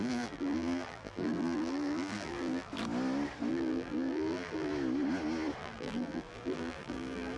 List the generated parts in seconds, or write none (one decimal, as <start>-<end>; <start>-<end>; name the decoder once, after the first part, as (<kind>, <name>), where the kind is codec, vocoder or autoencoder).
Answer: 0.0-2.7 (vocoder, BigVGAN v2); 3.5-4.7; 5.6-7.4